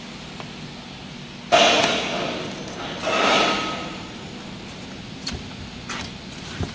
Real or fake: real